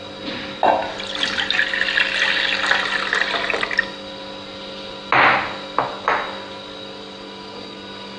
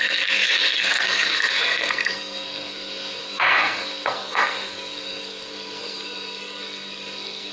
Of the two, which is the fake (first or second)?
second